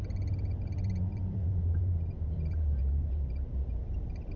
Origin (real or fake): fake